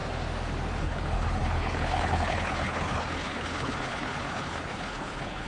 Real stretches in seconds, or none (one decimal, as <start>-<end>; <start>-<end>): 0.0-0.8